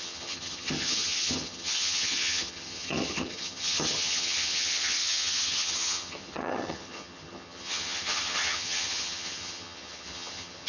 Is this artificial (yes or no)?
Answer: yes